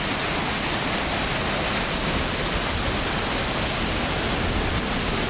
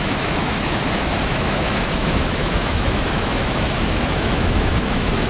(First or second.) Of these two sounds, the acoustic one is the first